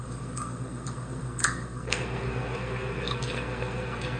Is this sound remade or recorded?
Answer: remade